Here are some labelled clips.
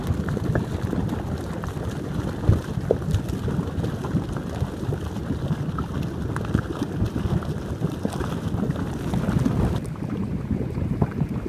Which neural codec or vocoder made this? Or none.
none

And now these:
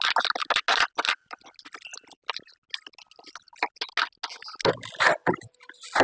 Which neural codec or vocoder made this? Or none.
none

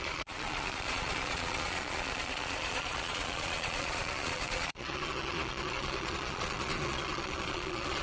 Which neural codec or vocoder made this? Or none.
vocoder, Vocos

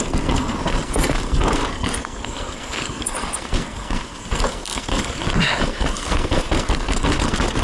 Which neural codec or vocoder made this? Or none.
codec, SNAC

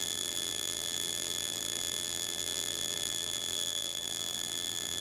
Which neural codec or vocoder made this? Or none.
vocoder, BigVGAN v2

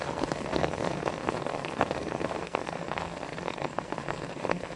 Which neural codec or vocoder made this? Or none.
codec, SNAC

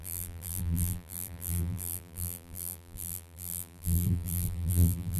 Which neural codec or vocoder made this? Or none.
vocoder, BigVGAN v2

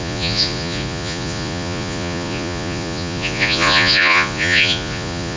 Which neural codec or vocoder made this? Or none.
vocoder, Vocos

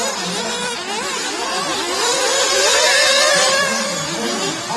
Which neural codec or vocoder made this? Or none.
none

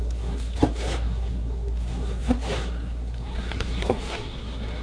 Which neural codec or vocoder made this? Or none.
codec, SNAC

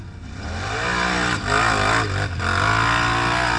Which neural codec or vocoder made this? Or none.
none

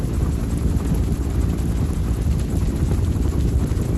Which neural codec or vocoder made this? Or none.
none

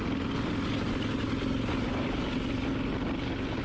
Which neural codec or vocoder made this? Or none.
none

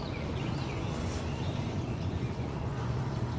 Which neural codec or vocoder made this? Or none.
vocoder, Vocos